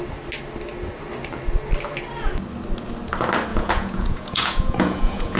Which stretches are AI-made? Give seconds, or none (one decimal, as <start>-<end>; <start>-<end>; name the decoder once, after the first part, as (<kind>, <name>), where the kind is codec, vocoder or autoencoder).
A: 3.5-5.4 (vocoder, Vocos)